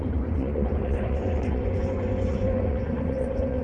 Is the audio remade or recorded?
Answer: remade